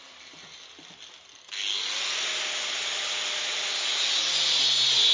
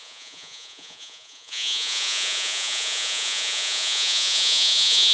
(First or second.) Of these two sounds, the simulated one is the second